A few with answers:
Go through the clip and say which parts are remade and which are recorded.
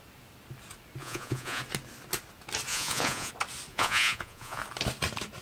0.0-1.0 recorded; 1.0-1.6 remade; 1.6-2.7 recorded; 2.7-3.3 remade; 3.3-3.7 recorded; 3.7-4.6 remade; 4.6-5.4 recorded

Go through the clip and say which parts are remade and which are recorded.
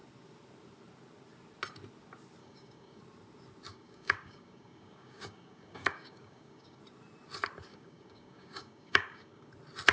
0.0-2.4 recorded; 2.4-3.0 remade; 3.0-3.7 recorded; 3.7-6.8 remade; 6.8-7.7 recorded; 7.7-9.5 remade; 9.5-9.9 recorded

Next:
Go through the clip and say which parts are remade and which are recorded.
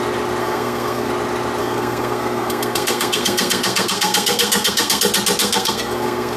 0.0-0.4 recorded; 0.4-1.1 remade; 1.1-1.6 recorded; 1.6-5.0 remade; 5.0-5.4 recorded; 5.4-6.4 remade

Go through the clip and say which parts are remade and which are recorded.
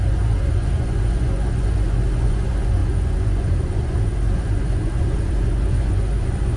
0.0-6.6 remade